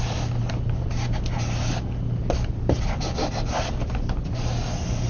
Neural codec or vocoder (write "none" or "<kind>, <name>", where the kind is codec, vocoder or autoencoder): none